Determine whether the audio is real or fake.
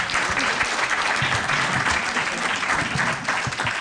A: real